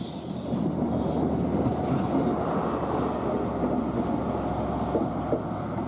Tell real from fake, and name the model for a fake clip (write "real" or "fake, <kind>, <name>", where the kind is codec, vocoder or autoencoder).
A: real